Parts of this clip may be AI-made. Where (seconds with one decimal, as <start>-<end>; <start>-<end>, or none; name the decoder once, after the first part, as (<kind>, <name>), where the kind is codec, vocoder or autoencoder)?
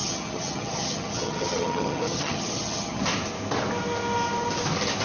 0.0-3.0 (vocoder, HiFi-GAN)